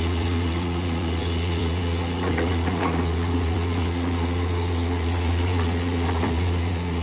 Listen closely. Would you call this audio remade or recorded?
remade